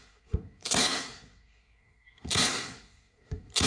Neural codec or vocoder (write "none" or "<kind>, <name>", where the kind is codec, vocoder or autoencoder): codec, SNAC